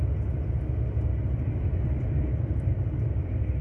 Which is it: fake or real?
real